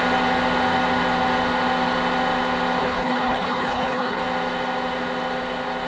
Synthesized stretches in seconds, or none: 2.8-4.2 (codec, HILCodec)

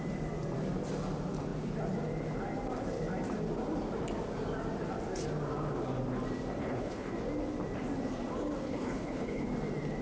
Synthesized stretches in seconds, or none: 6.6-7.1 (codec, HILCodec); 8.6-9.5

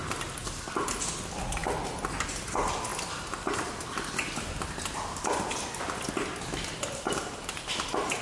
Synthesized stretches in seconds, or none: none